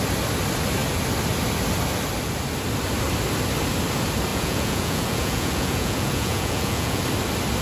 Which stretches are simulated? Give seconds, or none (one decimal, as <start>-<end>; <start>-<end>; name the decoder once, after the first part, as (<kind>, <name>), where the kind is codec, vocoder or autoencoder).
4.3-7.0 (vocoder, Vocos)